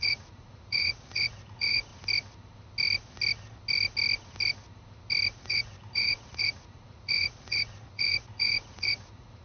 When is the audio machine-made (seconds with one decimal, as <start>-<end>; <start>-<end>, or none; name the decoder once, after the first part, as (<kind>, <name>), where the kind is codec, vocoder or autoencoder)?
0.0-1.9 (vocoder, Vocos); 5.4-9.4